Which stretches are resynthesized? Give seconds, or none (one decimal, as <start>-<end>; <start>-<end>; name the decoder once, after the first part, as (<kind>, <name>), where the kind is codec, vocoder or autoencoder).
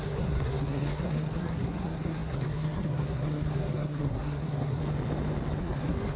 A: 0.0-4.8 (codec, SNAC); 5.6-6.2